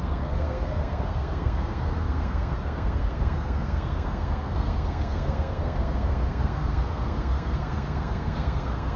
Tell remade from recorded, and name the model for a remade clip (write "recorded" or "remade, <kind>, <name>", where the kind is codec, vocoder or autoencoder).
remade, codec, SNAC